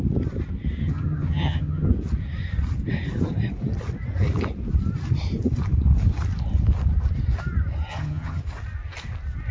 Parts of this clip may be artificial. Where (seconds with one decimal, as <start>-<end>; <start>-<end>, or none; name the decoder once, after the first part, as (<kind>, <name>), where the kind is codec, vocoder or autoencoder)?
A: 0.8-1.9 (vocoder, HiFi-GAN); 7.9-8.4